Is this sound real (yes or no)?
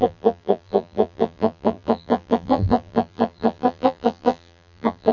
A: no